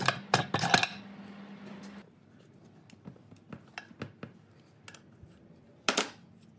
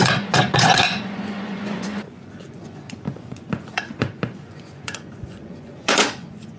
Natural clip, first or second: first